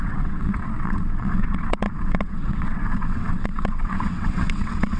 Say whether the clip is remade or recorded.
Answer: remade